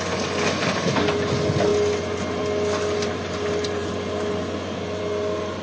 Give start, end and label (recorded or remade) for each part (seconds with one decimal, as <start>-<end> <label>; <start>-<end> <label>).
0.0-5.6 recorded